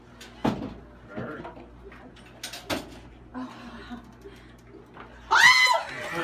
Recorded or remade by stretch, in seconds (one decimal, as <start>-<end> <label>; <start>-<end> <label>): 0.0-6.2 recorded